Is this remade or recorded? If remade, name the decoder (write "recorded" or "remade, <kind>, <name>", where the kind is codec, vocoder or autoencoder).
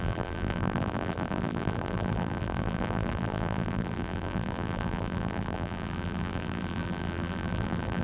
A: remade, vocoder, BigVGAN v2